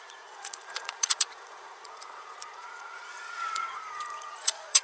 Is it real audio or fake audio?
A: fake